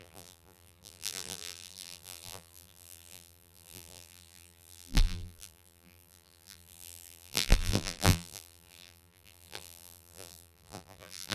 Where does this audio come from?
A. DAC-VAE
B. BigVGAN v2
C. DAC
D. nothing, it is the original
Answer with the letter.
B